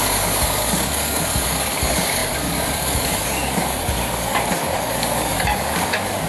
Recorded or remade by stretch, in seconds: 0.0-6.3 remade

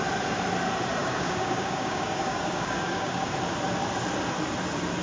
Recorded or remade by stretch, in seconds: 0.0-1.0 recorded; 1.0-3.3 remade; 3.3-5.0 recorded

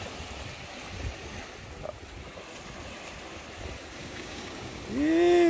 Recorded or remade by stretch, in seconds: 0.0-4.0 recorded; 4.0-4.8 remade; 4.8-5.5 recorded